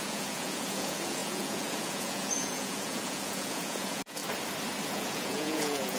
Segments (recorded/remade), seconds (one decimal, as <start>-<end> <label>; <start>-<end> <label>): 0.0-4.2 remade; 4.2-4.9 recorded; 4.9-6.0 remade